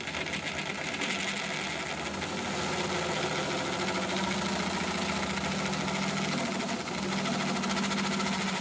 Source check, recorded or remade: recorded